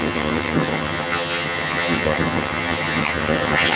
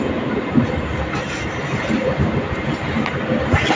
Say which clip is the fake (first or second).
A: first